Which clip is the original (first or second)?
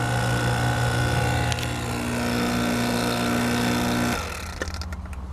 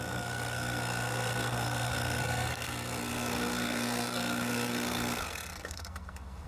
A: first